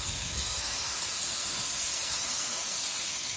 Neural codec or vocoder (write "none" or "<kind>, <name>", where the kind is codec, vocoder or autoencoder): codec, SNAC